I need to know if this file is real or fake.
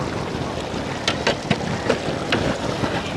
real